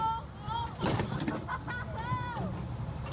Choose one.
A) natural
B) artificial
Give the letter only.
A